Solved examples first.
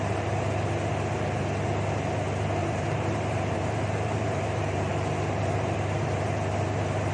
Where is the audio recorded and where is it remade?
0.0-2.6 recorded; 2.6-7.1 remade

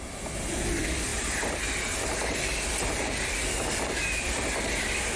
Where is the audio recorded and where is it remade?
0.0-5.2 recorded

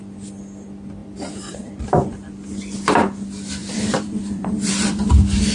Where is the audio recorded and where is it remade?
0.0-1.0 recorded; 1.0-2.1 remade; 2.1-3.6 recorded; 3.6-5.1 remade; 5.1-5.5 recorded

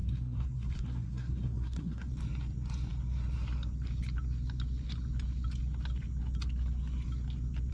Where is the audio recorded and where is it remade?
0.0-2.1 remade; 2.1-7.7 recorded

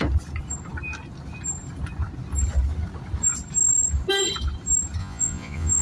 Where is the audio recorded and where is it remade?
0.0-5.0 recorded; 5.0-5.8 remade

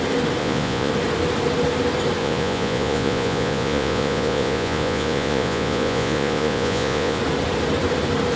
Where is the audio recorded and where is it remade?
0.0-0.4 recorded; 0.4-0.9 remade; 0.9-2.2 recorded; 2.2-7.2 remade; 7.2-8.4 recorded

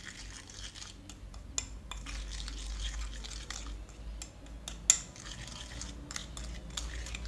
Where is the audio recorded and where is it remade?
0.0-7.3 recorded